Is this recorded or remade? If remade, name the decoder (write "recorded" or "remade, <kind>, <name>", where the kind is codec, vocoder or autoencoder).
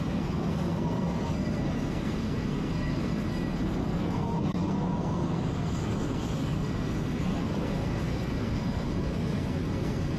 remade, codec, SNAC